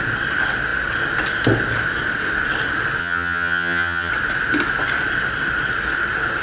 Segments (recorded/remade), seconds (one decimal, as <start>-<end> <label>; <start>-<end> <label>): 0.0-3.0 recorded; 3.0-4.1 remade; 4.1-6.4 recorded